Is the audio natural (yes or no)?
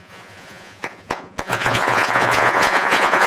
no